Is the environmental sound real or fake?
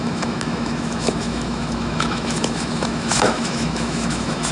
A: fake